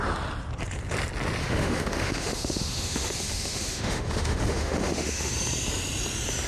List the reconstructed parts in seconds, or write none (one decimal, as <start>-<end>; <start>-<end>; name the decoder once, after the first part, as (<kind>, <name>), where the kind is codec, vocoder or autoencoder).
1.4-5.3 (autoencoder, DAC-VAE)